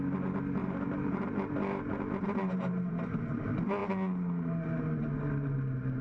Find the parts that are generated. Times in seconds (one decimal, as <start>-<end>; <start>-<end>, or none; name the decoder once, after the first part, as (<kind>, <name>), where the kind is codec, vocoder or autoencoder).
0.6-2.9 (vocoder, BigVGAN v2)

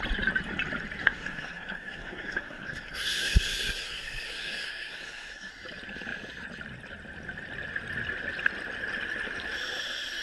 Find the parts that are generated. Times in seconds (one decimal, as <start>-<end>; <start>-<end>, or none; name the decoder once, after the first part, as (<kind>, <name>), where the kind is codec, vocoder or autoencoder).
1.0-5.5 (codec, SNAC)

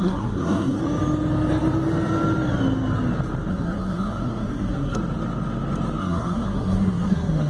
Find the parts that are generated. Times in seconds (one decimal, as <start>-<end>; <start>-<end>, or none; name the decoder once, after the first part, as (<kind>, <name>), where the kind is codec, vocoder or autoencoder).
0.0-0.8 (codec, SNAC); 3.5-5.0; 6.0-7.5

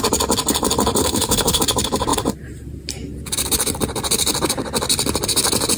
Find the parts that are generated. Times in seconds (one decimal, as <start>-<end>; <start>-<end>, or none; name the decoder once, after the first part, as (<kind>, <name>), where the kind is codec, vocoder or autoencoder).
1.0-1.6 (codec, SNAC)

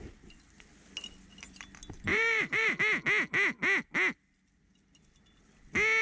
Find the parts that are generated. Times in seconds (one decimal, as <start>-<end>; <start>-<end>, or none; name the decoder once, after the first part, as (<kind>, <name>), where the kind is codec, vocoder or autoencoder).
2.1-2.8 (vocoder, BigVGAN v2)

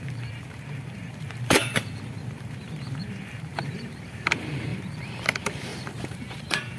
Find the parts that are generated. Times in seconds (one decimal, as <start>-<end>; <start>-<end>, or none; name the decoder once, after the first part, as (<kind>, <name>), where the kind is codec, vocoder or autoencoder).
0.0-6.8 (vocoder, BigVGAN v2)

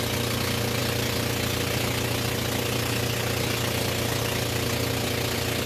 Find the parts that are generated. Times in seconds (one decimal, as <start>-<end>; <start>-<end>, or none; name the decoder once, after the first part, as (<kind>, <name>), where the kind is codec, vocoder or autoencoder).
none